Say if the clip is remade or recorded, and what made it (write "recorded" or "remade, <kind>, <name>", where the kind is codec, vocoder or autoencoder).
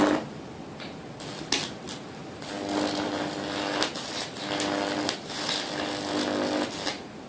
recorded